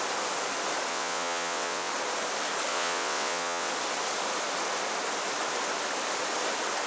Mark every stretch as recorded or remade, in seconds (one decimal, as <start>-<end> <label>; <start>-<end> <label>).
0.0-0.9 recorded; 0.9-1.9 remade; 1.9-2.7 recorded; 2.7-3.7 remade; 3.7-6.9 recorded